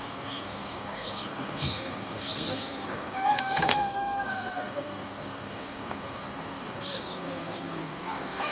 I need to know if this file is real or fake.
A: fake